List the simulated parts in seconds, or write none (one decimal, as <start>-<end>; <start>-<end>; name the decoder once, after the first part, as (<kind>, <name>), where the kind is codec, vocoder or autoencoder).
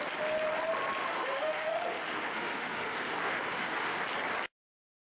1.0-4.0 (autoencoder, DAC-VAE)